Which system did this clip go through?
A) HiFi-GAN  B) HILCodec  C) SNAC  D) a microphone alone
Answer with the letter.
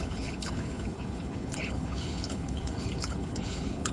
B